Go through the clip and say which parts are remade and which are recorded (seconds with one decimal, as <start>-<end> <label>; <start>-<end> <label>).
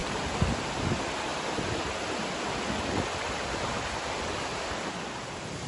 0.0-5.7 recorded